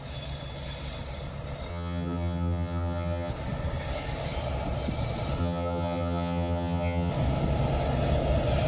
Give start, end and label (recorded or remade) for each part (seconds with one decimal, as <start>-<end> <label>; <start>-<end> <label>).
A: 0.0-1.7 recorded; 1.7-3.3 remade; 3.3-5.4 recorded; 5.4-7.1 remade; 7.1-8.7 recorded